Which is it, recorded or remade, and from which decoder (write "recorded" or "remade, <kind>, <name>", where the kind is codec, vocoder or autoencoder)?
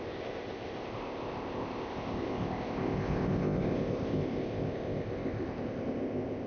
remade, codec, ZipCodec